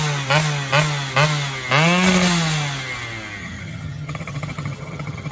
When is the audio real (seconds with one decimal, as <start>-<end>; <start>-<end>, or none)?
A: 0.0-3.4